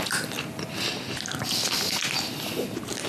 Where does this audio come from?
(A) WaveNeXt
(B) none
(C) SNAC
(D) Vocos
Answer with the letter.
B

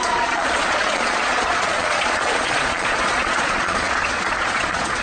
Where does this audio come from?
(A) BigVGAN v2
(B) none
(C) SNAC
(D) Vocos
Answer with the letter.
D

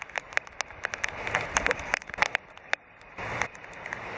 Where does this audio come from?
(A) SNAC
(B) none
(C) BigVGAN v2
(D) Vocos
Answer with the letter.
B